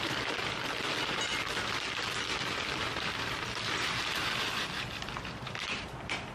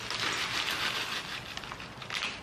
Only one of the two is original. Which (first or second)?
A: second